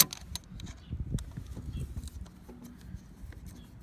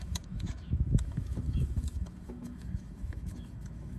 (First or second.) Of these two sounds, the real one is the first